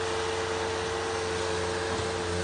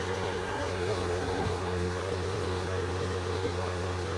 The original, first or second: first